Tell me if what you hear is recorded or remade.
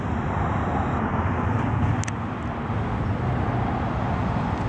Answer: recorded